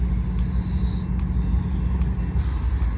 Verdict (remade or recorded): recorded